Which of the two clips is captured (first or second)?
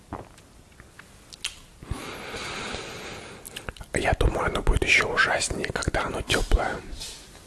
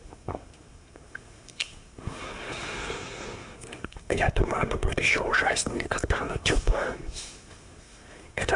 first